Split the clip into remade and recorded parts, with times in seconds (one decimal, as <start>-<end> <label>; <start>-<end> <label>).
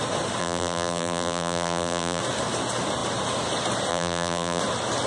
0.0-0.4 recorded; 0.4-2.2 remade; 2.2-3.9 recorded; 3.9-4.6 remade; 4.6-5.1 recorded